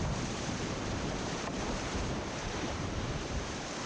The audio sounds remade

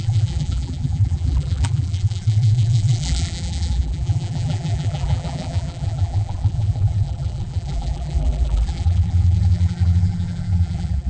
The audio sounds remade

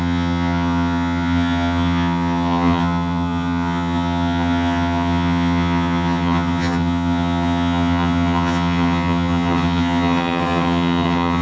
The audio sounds remade